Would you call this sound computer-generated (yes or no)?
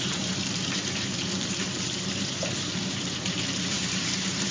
yes